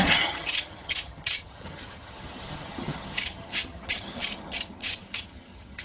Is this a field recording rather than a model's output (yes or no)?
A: no